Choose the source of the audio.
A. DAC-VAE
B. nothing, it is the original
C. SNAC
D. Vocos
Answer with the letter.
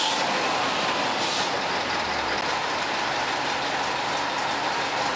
B